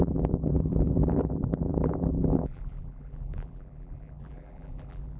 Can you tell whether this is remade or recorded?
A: remade